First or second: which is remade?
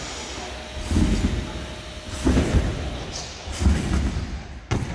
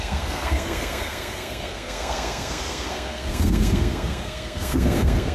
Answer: second